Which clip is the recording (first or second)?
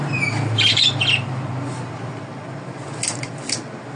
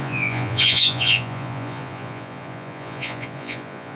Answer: first